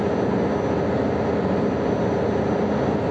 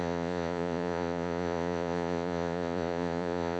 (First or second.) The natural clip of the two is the first